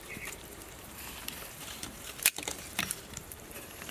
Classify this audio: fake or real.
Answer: fake